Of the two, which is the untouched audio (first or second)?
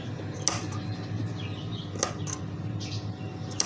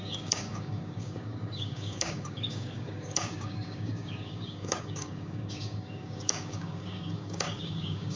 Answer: first